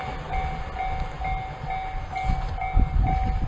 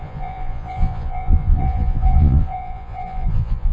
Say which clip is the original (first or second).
first